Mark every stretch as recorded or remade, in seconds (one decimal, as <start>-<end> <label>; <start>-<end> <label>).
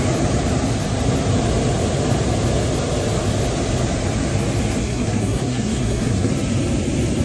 0.0-4.8 recorded; 4.8-6.3 remade; 6.3-7.2 recorded